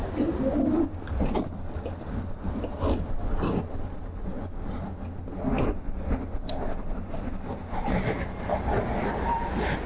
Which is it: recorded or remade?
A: recorded